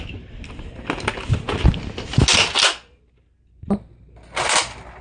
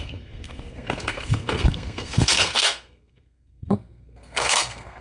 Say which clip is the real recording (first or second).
first